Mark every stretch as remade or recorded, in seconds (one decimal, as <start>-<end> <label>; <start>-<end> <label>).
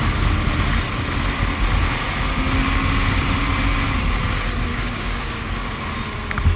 0.0-4.7 recorded; 4.7-5.8 remade; 5.8-6.6 recorded